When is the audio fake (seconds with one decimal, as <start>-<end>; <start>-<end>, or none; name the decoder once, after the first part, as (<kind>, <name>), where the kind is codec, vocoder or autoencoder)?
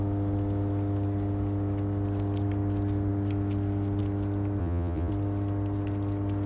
4.6-5.1 (vocoder, WaveNeXt)